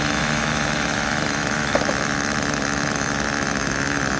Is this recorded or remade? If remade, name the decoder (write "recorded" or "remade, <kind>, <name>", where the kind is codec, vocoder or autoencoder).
remade, autoencoder, DAC-VAE